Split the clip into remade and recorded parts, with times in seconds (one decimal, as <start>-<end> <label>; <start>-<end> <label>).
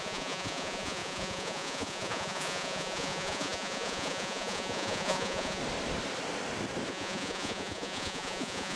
0.0-5.6 remade; 5.6-6.9 recorded; 6.9-8.8 remade